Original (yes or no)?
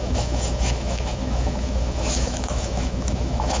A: no